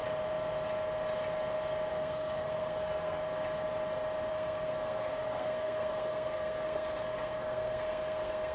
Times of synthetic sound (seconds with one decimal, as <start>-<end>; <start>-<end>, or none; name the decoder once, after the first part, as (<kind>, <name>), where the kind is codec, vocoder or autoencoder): 1.9-3.2 (codec, SNAC); 4.3-8.5